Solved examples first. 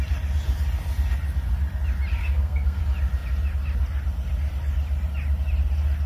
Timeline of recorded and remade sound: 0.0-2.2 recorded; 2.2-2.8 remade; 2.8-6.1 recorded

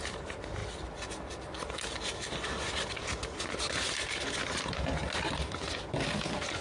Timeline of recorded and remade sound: 0.0-6.6 recorded

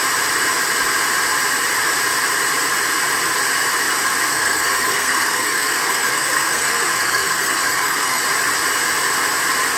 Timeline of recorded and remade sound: 0.0-4.3 recorded; 4.3-8.2 remade; 8.2-9.8 recorded

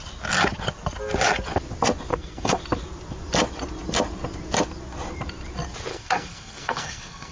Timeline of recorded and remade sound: 0.0-2.1 recorded; 2.1-2.6 remade; 2.6-5.9 recorded; 5.9-7.3 remade